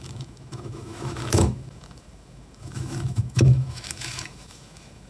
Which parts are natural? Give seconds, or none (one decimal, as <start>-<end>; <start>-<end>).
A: none

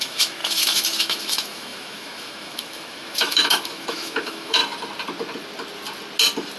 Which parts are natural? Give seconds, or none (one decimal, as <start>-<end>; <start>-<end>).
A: 4.6-6.6

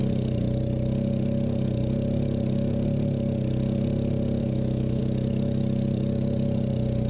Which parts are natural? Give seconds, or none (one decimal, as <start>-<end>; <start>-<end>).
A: 0.0-4.4; 5.0-7.1

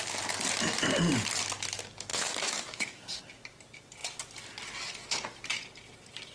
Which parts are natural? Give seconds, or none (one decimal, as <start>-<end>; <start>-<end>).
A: 0.0-2.1; 3.2-6.3

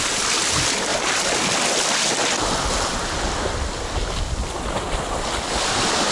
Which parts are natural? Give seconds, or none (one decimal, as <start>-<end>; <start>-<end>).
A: 0.0-6.1

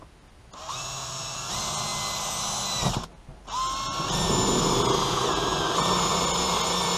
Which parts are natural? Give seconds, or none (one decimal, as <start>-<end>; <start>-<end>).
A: 0.0-7.0

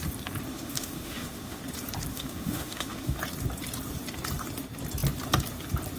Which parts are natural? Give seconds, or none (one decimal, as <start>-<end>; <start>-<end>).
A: 0.0-0.5; 1.6-2.1; 3.2-6.0